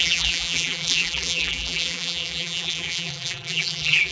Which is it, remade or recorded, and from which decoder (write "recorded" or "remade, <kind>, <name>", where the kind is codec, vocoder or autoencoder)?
remade, vocoder, BigVGAN v2